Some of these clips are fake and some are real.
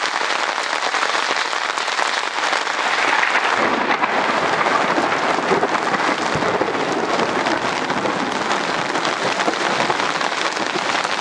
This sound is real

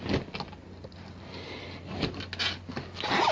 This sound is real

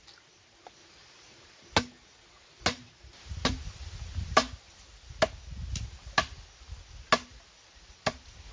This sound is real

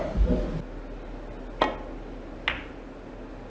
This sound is real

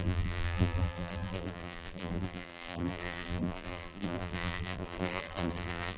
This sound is fake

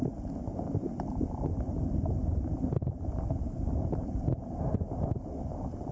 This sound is real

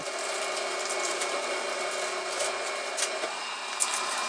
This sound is real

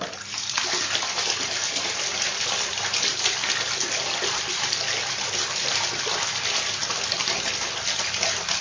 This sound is real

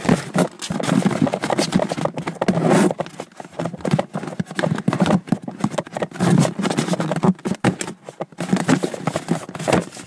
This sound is real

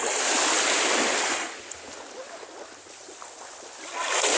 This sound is real